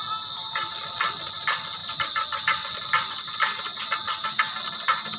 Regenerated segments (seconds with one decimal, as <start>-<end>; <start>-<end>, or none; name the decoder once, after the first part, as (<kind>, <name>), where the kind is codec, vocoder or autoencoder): none